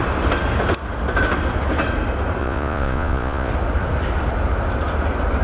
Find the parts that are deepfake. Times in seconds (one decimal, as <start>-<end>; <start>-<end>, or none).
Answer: 2.4-3.5